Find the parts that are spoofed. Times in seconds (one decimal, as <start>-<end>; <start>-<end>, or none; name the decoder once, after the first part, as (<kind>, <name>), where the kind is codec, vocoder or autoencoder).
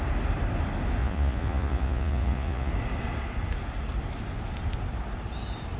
1.0-2.7 (vocoder, Vocos)